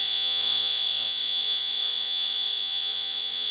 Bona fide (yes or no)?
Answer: no